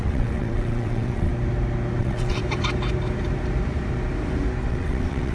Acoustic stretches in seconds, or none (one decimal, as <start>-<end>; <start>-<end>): 1.3-2.0; 2.4-4.7